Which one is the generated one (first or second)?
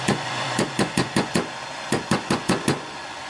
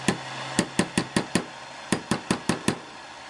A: first